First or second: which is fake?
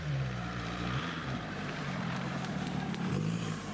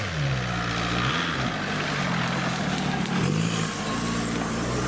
first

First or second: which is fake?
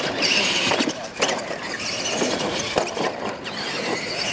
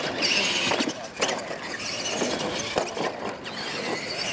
first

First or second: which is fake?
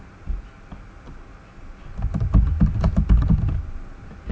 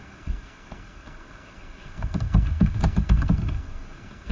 second